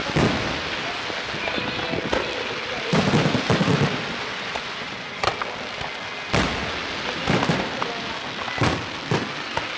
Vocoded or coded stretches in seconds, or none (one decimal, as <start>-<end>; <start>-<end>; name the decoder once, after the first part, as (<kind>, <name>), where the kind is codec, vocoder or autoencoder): 4.3-5.3 (vocoder, Vocos)